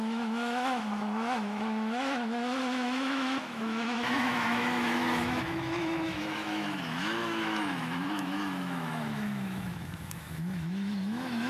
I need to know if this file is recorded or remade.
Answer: remade